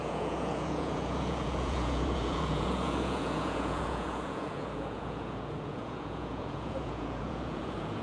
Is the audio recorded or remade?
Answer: remade